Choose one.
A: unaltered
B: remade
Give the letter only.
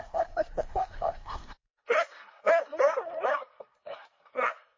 B